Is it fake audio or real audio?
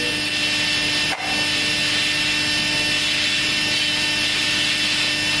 real